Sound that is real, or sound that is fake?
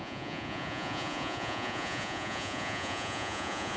fake